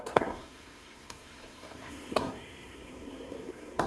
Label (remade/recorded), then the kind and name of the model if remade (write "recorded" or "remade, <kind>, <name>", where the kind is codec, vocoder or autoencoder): remade, codec, SNAC